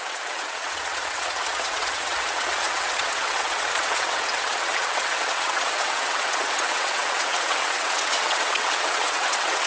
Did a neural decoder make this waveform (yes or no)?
yes